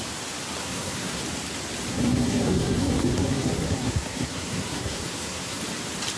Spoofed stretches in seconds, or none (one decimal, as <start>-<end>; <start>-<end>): 0.6-1.2; 1.9-5.6